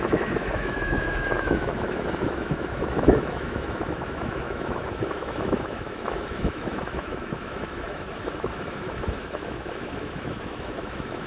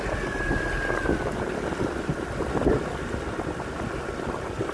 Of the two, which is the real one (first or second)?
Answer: second